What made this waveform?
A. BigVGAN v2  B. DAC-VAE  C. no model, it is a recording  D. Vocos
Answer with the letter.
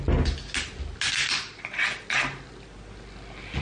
C